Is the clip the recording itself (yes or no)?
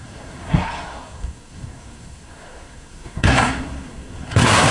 no